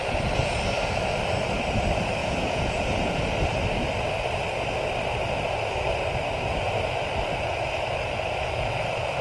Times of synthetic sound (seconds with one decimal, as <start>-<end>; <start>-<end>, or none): 2.2-3.2

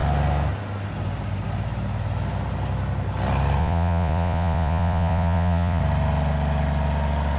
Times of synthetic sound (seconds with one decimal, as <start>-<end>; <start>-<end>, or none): 3.6-5.8

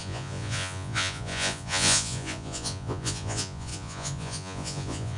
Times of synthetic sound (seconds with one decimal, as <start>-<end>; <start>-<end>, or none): 0.0-5.2

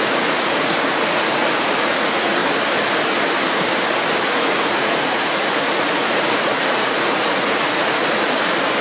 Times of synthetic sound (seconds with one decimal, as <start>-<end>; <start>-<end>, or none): 0.0-2.4; 4.2-8.0

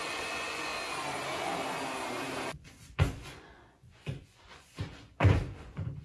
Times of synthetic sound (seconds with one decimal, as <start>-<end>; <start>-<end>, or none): 0.0-0.7; 2.5-6.0